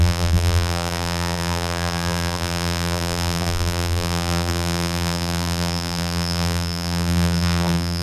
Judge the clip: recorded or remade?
remade